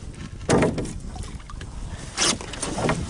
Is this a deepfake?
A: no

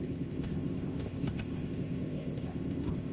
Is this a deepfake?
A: yes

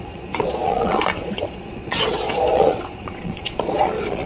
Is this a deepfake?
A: yes